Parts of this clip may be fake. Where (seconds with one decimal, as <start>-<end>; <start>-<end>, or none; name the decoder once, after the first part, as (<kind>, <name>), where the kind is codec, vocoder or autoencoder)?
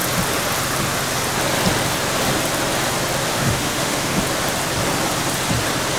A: 3.3-4.2 (autoencoder, DAC-VAE)